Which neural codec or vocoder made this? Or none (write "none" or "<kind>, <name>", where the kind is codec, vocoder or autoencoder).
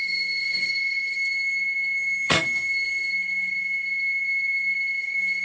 codec, SNAC